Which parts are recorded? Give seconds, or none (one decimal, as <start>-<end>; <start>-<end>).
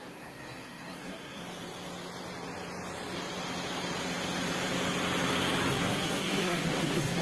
1.4-5.7